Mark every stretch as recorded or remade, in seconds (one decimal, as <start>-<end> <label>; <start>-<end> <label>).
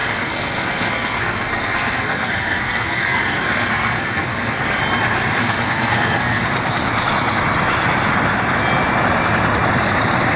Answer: 0.0-4.8 remade; 4.8-5.4 recorded; 5.4-6.4 remade; 6.4-10.4 recorded